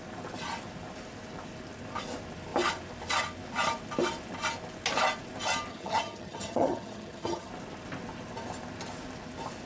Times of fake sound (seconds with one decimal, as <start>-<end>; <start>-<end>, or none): 5.7-7.5